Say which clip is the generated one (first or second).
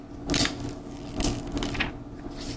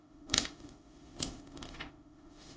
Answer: second